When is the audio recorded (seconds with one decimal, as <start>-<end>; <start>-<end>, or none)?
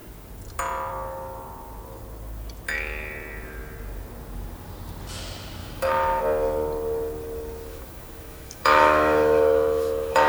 0.0-5.6; 6.2-7.7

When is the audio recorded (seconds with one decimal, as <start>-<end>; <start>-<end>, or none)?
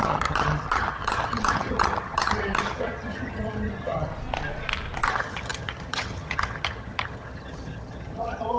4.1-5.0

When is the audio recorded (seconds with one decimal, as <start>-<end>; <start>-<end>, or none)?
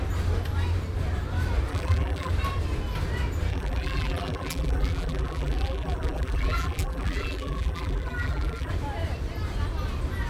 0.0-1.7; 2.3-3.5; 8.7-10.3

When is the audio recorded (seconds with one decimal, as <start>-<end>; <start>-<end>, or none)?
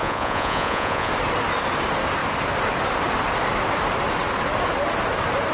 1.1-5.5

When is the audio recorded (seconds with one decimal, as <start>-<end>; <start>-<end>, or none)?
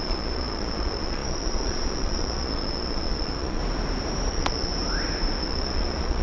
3.6-4.3; 4.7-5.4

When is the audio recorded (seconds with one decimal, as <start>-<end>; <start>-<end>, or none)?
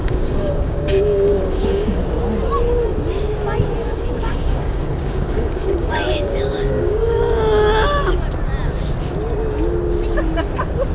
2.0-3.8; 7.2-10.9